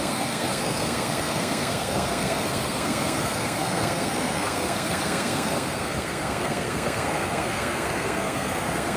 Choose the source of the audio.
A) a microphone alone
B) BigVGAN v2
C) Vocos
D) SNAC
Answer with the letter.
D